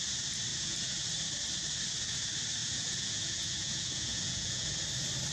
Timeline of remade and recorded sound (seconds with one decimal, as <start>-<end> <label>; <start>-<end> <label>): 0.0-0.5 recorded; 0.5-1.1 remade; 1.1-2.6 recorded; 2.6-4.7 remade; 4.7-5.3 recorded